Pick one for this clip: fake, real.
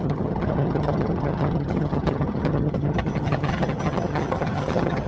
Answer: fake